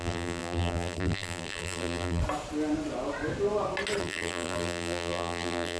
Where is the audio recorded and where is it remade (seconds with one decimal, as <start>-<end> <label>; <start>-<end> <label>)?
0.0-2.2 remade; 2.2-4.0 recorded; 4.0-5.8 remade